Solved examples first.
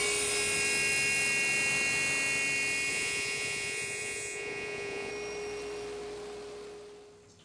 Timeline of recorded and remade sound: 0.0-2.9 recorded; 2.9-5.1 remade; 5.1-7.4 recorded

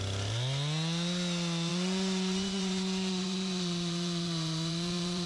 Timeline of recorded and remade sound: 0.0-1.7 recorded; 1.7-5.3 remade

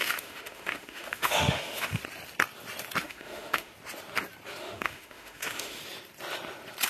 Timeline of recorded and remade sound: 0.0-2.0 remade; 2.0-3.0 recorded; 3.0-3.7 remade; 3.7-4.6 recorded; 4.6-5.8 remade; 5.8-6.9 recorded